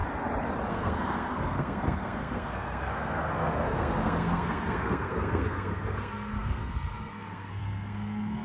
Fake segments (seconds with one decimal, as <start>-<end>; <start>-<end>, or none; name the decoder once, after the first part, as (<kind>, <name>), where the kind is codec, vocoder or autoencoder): 0.7-8.4 (codec, SNAC)